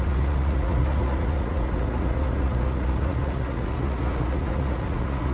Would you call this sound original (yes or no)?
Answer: no